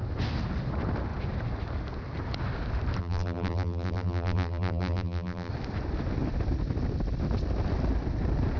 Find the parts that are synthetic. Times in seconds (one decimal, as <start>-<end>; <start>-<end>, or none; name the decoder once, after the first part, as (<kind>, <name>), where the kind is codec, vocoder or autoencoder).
3.0-5.5 (vocoder, BigVGAN v2)